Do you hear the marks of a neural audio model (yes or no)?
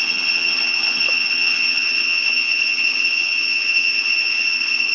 yes